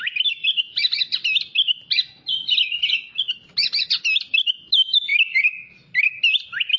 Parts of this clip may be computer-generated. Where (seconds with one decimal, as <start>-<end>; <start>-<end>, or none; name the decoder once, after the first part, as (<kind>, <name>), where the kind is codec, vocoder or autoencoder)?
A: none